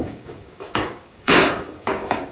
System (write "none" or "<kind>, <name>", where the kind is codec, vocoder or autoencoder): codec, DAC